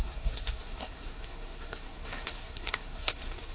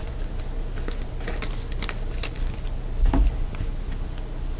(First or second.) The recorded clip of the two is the second